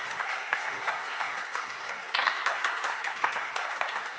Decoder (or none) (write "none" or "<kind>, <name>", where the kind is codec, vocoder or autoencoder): codec, SNAC